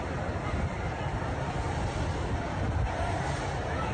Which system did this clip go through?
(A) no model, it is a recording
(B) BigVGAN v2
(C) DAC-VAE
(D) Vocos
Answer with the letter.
B